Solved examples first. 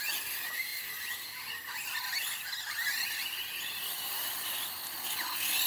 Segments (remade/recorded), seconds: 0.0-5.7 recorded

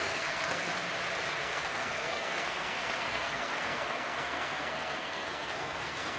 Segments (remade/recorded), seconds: 0.0-0.7 remade; 0.7-1.4 recorded; 1.4-6.2 remade